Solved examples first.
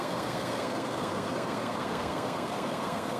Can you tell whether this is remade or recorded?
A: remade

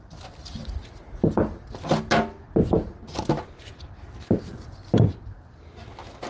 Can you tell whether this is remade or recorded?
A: recorded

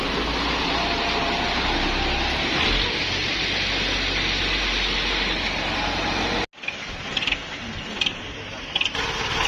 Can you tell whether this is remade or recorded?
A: recorded